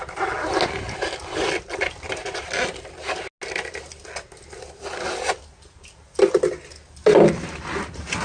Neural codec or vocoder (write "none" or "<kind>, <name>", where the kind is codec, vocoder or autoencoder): none